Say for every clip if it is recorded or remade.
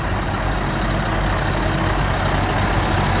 recorded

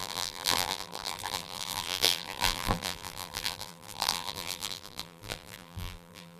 remade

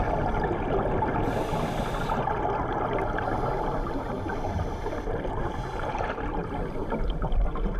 recorded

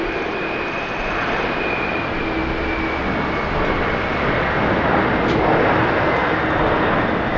recorded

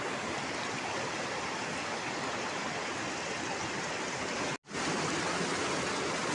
recorded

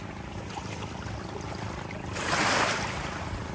recorded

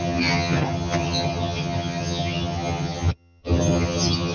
remade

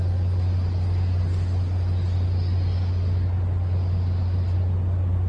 recorded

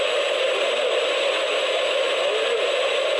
recorded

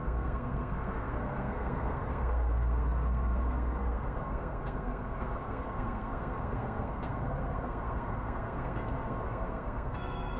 remade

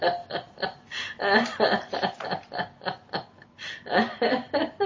recorded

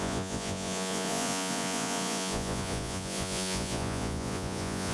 remade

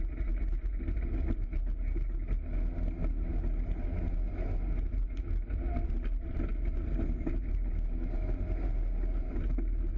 recorded